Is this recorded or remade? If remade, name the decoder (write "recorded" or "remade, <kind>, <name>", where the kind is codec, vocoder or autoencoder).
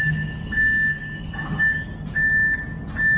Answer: recorded